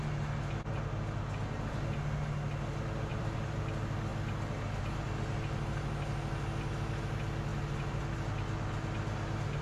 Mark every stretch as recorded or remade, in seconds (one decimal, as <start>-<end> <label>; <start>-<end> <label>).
0.0-3.1 recorded; 3.1-3.6 remade; 3.6-9.6 recorded